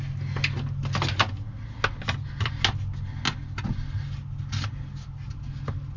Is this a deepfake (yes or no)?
no